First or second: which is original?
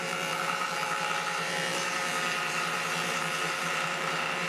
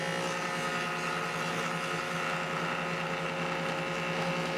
second